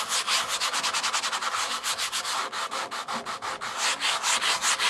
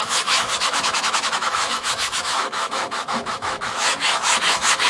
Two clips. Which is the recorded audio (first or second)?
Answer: first